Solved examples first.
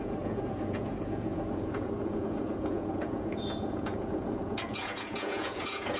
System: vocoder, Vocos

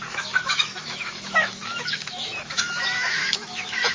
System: autoencoder, DAC-VAE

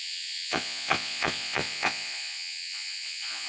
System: vocoder, Vocos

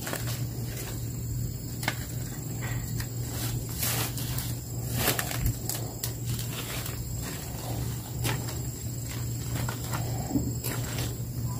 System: none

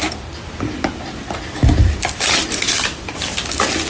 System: vocoder, BigVGAN v2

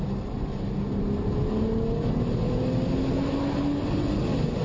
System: none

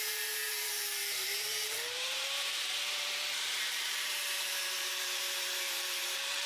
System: vocoder, BigVGAN v2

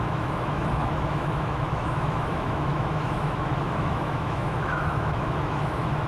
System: autoencoder, DAC-VAE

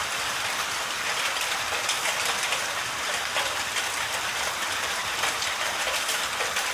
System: vocoder, BigVGAN v2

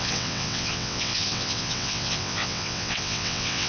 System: vocoder, WaveNeXt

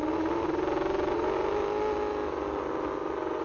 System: none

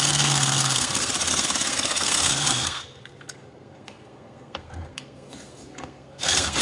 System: codec, SNAC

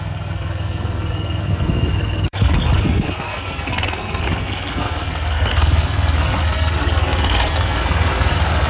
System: codec, SNAC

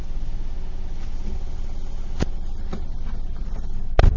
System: none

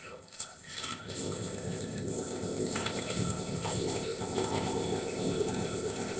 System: codec, ZipCodec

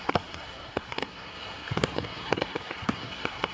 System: codec, SNAC